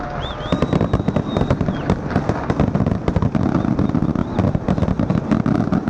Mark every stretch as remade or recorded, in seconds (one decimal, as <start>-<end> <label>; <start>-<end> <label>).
0.0-5.9 recorded